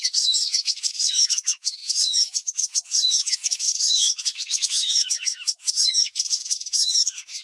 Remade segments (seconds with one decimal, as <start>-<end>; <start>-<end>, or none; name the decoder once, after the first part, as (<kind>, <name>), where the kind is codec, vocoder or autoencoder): 0.0-7.4 (autoencoder, DAC-VAE)